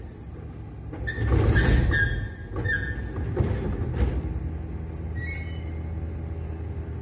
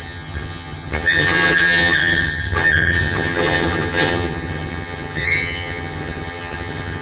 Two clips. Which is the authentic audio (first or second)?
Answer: first